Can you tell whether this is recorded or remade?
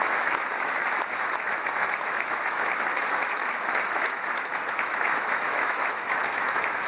remade